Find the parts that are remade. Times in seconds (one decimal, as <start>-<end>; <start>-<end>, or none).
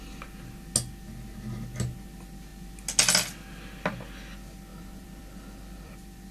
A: 4.7-6.3